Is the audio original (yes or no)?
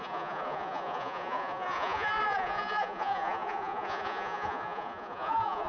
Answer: no